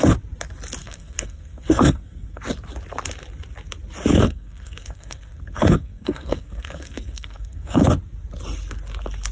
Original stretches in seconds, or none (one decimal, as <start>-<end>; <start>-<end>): 0.0-0.8; 2.4-4.1; 7.9-9.3